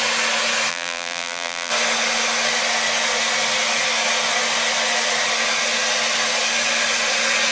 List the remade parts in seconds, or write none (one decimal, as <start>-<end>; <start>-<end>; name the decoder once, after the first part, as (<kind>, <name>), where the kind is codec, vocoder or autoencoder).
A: 0.7-1.7 (vocoder, BigVGAN v2)